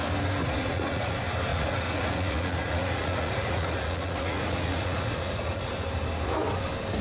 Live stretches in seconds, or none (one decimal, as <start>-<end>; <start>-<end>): 0.0-0.4; 1.1-1.5; 5.7-7.0